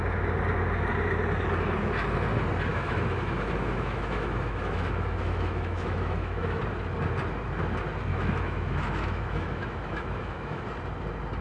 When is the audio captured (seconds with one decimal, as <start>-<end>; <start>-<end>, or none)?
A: 0.0-2.7; 6.6-8.1; 10.7-11.4